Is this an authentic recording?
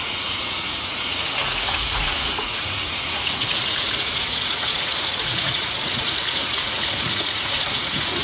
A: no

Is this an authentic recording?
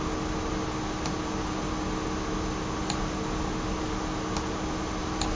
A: yes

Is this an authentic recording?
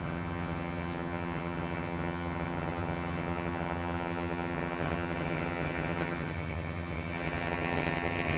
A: no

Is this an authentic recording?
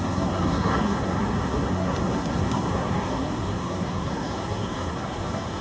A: no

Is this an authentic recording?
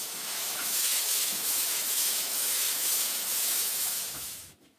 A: no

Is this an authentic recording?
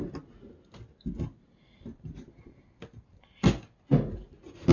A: yes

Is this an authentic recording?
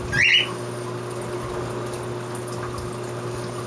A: yes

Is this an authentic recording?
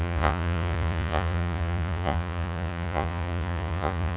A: no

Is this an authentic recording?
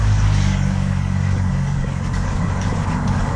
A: no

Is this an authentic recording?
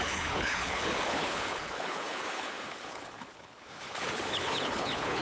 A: no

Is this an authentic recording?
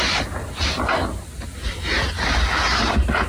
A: yes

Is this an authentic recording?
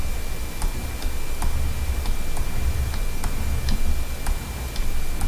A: yes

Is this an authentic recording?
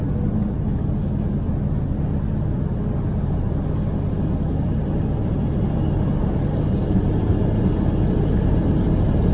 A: yes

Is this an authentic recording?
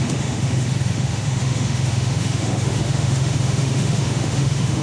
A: no